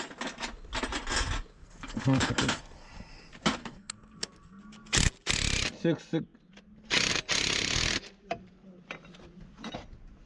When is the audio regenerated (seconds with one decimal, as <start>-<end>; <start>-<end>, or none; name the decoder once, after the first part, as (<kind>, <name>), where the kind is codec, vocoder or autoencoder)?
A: 1.6-2.3 (codec, SNAC); 3.6-4.6